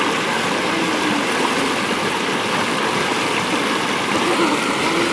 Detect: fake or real real